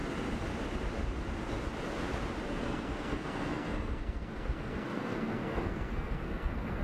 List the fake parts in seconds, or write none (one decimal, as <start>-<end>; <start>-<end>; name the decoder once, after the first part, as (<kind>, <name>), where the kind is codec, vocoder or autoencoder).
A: 2.5-6.8 (codec, SNAC)